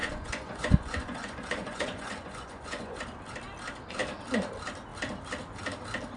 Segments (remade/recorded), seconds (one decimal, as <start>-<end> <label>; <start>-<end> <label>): 0.0-3.0 remade; 3.0-6.2 recorded